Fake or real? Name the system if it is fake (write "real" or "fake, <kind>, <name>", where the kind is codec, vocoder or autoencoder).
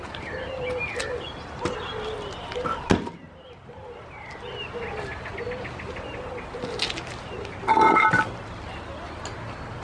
real